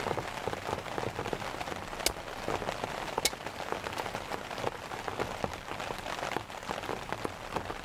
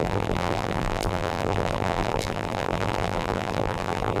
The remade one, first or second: second